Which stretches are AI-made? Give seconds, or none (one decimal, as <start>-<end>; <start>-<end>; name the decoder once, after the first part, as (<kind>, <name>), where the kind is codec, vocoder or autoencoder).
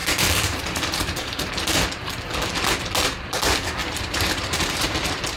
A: 0.0-1.5 (vocoder, BigVGAN v2); 3.8-5.4